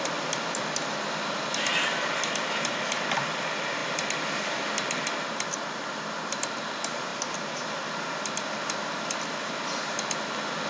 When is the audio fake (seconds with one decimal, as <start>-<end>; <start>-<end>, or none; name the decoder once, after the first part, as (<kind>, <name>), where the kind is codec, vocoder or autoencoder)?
none